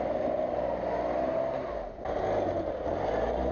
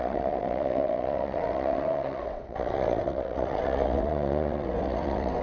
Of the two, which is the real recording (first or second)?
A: first